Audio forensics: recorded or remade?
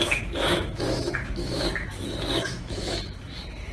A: remade